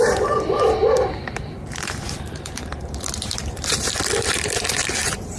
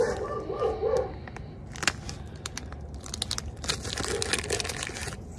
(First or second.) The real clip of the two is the second